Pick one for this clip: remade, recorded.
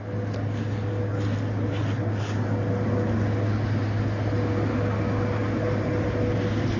recorded